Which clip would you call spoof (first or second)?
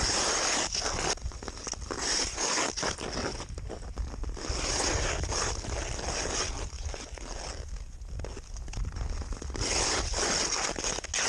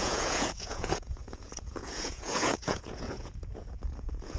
second